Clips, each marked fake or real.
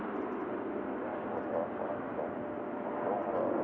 real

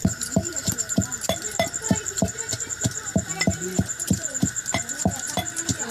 fake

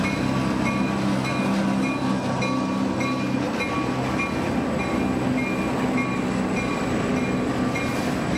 real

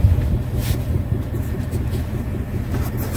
real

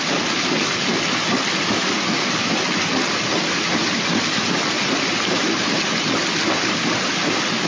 real